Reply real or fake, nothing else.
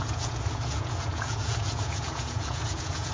fake